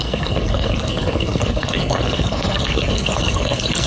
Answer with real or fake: fake